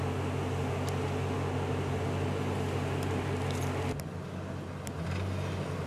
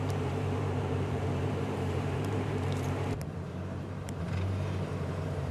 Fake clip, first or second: second